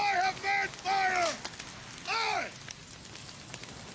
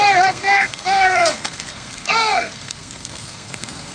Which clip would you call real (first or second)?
first